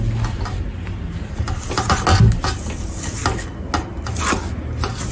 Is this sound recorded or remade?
recorded